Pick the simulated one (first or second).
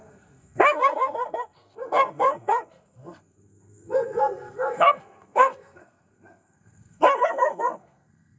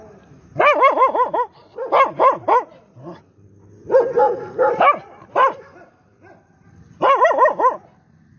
first